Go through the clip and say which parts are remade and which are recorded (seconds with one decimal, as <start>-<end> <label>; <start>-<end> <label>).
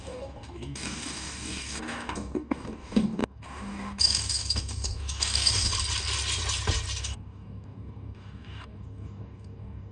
0.0-5.7 remade; 5.7-7.0 recorded; 7.0-9.9 remade